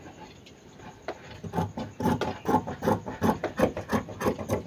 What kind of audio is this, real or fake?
real